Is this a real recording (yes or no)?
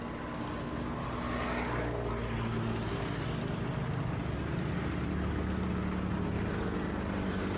yes